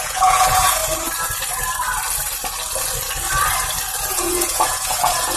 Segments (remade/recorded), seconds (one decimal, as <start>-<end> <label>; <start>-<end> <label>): 0.0-0.8 remade; 0.8-4.0 recorded; 4.0-5.4 remade